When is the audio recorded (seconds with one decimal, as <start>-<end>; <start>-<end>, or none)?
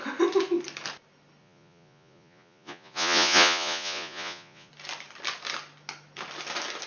0.0-1.4; 4.7-6.9